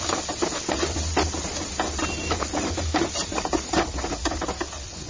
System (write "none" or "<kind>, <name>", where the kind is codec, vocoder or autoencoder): none